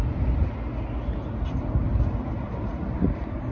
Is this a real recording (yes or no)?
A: yes